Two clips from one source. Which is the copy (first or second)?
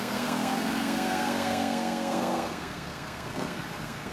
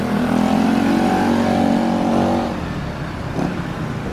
first